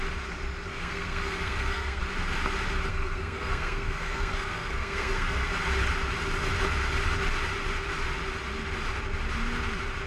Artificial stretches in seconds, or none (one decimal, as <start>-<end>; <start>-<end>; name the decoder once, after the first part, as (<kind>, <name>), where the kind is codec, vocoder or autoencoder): 0.7-2.0 (codec, SNAC); 2.9-5.5